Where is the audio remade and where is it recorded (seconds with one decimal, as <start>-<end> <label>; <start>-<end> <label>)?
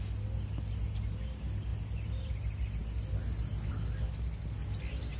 0.0-5.2 recorded